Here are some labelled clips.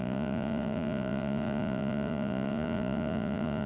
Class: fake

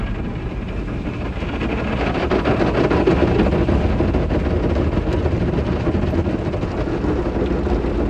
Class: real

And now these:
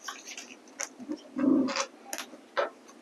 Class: real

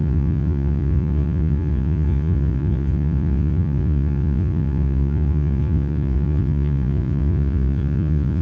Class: fake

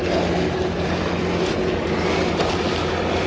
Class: real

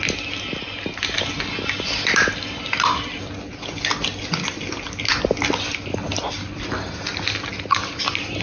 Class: real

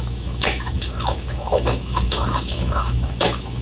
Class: fake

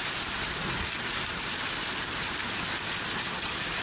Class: real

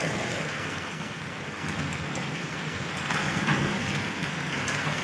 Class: fake